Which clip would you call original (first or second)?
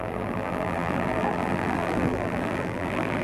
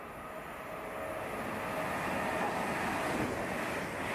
second